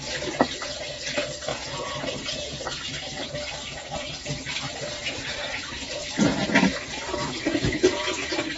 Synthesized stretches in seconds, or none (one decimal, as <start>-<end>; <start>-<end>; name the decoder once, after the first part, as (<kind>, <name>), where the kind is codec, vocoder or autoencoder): 1.5-2.1 (vocoder, Vocos); 5.0-5.6